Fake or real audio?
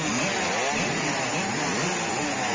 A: real